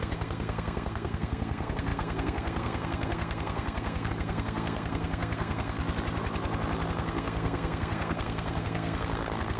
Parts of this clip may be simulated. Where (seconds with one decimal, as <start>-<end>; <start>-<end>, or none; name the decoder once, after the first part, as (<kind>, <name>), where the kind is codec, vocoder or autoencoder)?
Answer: 0.0-5.8 (codec, SNAC); 6.9-9.6

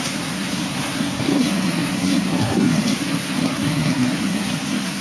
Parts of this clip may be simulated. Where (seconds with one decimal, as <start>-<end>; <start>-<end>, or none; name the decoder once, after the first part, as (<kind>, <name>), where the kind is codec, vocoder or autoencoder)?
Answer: 0.0-5.0 (codec, SNAC)